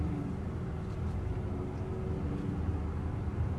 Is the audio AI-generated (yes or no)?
no